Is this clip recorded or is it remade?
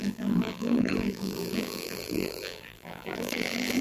remade